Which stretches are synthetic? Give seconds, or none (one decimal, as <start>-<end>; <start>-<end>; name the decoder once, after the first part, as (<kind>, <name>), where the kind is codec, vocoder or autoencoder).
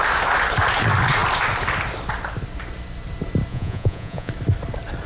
3.5-4.3 (vocoder, Vocos)